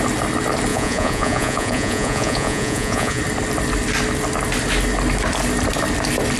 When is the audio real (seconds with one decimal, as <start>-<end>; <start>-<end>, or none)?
0.0-0.7; 3.2-6.4